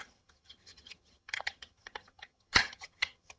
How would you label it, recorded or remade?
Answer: remade